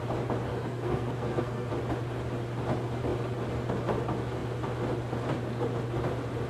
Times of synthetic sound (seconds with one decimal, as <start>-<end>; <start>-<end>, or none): 0.5-1.7